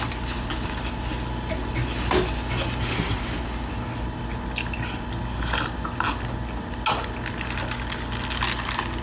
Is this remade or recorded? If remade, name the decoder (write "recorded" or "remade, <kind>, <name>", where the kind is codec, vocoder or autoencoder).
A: recorded